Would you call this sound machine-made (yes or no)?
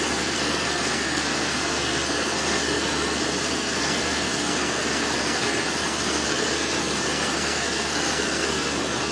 yes